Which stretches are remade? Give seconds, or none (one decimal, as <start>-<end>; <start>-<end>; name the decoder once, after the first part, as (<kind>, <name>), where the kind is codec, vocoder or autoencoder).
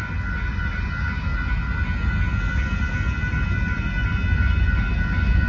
none